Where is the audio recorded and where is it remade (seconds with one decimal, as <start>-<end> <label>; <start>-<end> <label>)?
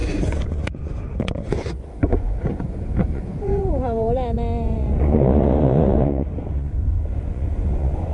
0.0-8.1 remade